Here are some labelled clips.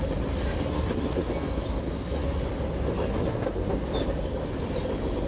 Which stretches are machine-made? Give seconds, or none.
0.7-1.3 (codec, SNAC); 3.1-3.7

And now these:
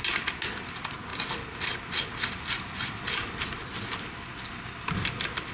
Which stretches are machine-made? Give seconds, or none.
none